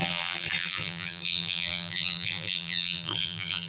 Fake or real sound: fake